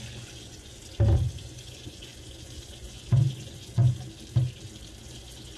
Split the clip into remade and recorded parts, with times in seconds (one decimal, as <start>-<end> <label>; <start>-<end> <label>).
0.0-0.8 remade; 0.8-1.3 recorded; 1.3-3.8 remade; 3.8-5.0 recorded; 5.0-5.6 remade